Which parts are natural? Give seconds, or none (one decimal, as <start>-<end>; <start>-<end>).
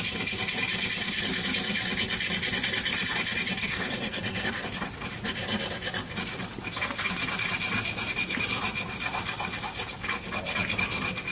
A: 0.0-3.6; 4.5-11.3